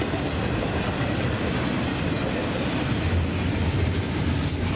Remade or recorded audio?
recorded